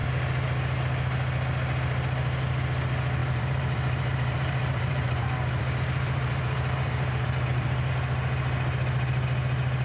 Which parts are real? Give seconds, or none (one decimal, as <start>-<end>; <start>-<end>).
0.0-3.2; 7.9-9.8